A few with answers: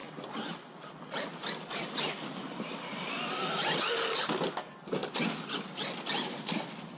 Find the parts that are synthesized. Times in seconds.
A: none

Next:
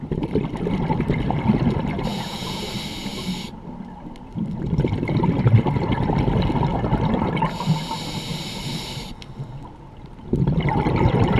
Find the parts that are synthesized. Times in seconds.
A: 2.1-2.7 (vocoder, Vocos)

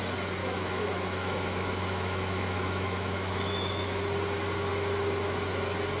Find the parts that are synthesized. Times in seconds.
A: 0.4-4.0 (autoencoder, DAC-VAE)

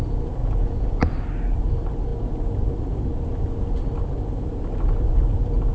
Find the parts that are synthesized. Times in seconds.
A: 0.4-1.0 (vocoder, Vocos)

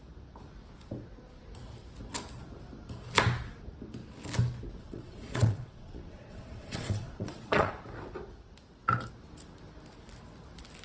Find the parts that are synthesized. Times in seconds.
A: 4.8-7.7 (vocoder, Vocos)

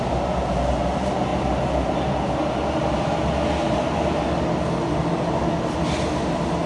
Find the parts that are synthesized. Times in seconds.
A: none

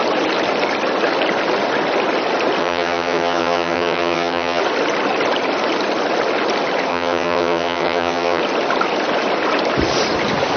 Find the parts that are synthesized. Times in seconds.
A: 2.6-4.6 (vocoder, HiFi-GAN); 6.9-8.4

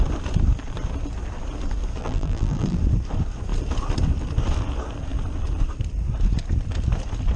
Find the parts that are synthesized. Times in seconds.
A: 2.0-2.8 (vocoder, BigVGAN v2)